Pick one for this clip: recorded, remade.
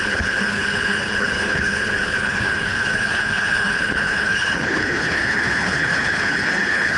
remade